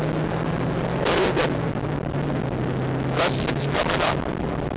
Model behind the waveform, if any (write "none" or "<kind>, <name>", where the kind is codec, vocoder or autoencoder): none